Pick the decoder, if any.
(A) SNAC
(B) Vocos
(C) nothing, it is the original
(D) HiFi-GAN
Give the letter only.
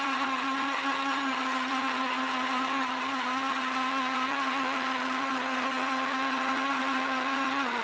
D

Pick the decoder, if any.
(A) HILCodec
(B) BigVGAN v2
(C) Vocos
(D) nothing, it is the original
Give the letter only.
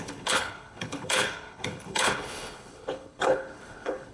A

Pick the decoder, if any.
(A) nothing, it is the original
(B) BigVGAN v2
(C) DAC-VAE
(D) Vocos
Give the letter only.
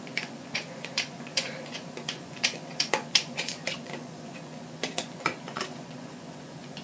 D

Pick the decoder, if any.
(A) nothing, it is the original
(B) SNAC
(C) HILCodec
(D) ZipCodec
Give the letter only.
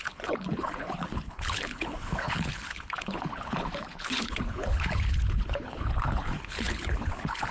C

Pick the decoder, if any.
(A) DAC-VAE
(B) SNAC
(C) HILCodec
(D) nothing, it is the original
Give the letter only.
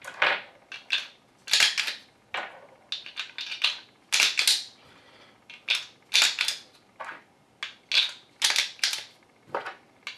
D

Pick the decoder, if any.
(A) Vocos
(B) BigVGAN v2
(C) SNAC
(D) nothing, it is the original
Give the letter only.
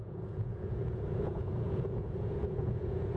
A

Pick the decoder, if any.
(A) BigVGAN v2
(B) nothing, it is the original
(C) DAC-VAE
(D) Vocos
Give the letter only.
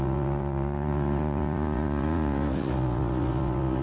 D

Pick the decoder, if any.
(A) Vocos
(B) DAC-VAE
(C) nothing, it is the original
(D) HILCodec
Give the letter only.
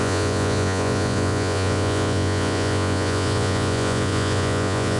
A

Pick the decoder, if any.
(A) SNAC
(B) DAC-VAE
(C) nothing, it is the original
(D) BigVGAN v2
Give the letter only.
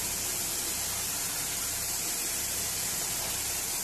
C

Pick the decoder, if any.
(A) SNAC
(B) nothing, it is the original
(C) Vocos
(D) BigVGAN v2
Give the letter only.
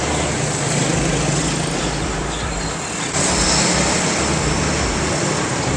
B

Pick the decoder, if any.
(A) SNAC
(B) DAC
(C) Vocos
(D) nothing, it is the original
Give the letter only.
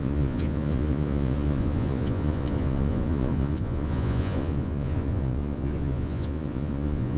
C